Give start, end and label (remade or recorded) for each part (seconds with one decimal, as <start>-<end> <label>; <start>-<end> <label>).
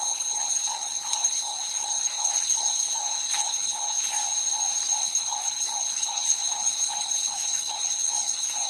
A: 0.0-4.2 remade; 4.2-5.0 recorded; 5.0-8.7 remade